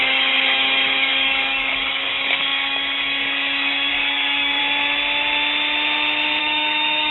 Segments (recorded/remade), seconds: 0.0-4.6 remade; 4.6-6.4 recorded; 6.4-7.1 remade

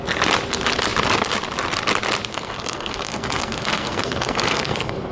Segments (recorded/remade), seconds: 0.0-2.3 recorded; 2.3-5.1 remade

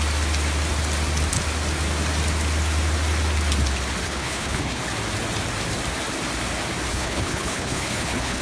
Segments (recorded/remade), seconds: 0.0-4.0 recorded; 4.0-4.8 remade; 4.8-6.9 recorded; 6.9-8.4 remade